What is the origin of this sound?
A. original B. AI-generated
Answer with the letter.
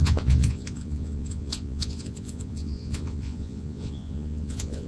B